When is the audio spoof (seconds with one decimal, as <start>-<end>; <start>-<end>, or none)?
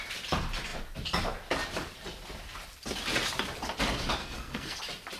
4.2-4.8